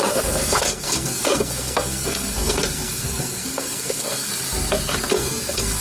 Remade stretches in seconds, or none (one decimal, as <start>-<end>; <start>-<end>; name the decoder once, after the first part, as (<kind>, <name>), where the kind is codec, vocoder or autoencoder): 0.0-4.3 (codec, SNAC); 5.1-5.8